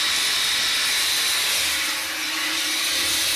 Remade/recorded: recorded